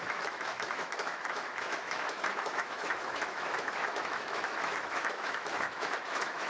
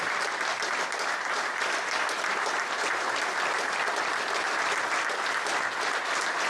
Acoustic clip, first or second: second